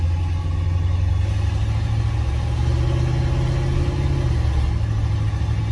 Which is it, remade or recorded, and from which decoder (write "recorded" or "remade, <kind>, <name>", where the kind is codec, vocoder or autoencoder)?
recorded